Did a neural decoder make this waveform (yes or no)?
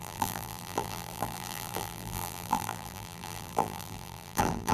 yes